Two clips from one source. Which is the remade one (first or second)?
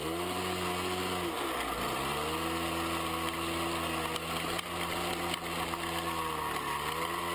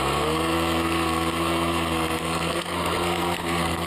second